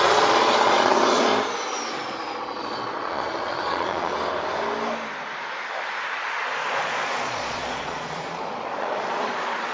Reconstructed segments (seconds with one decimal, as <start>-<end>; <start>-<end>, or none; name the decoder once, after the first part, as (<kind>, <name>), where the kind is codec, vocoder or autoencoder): 0.0-1.3 (vocoder, Vocos); 2.4-4.1; 6.7-9.7